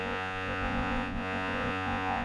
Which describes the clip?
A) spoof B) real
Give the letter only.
A